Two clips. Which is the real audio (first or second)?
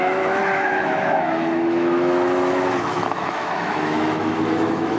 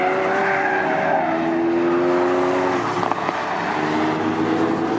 second